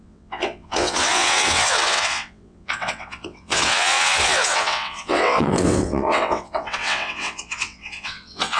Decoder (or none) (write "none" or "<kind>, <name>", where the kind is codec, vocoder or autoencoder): vocoder, WaveNeXt